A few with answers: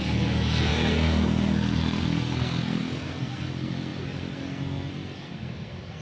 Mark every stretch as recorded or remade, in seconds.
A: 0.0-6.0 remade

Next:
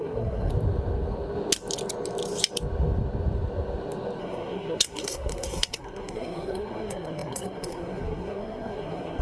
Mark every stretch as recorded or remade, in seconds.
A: 0.0-0.5 remade; 0.5-4.2 recorded; 4.2-9.2 remade

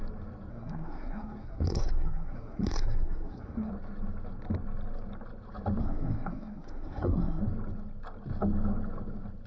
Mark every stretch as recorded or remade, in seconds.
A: 0.0-0.5 recorded; 0.5-3.7 remade; 3.7-5.8 recorded; 5.8-7.4 remade; 7.4-9.5 recorded

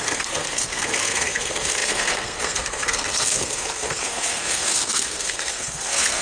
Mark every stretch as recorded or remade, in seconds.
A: 0.0-6.2 remade

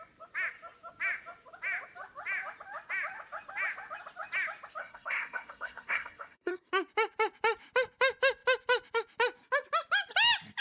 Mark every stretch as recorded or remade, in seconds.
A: 0.0-4.8 recorded; 4.8-6.7 remade; 6.7-10.6 recorded

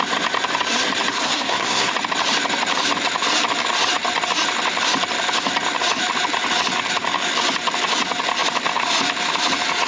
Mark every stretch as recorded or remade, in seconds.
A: 0.0-1.1 recorded; 1.1-1.9 remade; 1.9-9.9 recorded

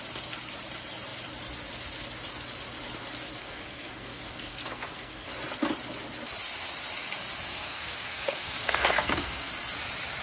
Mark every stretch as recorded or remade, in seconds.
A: 0.0-3.4 recorded; 3.4-5.3 remade; 5.3-7.5 recorded; 7.5-9.5 remade; 9.5-10.2 recorded